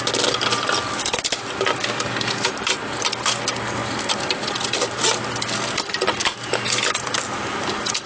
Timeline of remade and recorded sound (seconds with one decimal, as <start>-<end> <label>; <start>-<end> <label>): 0.0-8.1 recorded